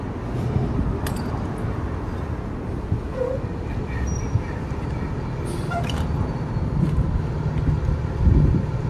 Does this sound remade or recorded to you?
recorded